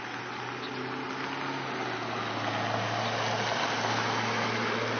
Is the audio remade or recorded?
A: recorded